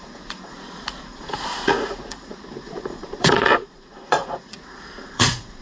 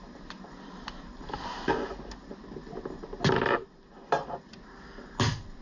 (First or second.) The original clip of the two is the second